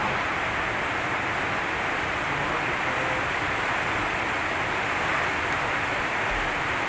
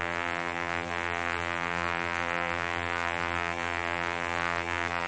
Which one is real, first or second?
first